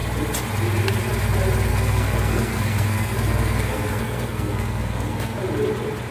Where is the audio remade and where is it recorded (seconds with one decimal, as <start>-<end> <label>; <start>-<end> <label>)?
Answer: 0.0-1.7 recorded; 1.7-5.4 remade; 5.4-6.1 recorded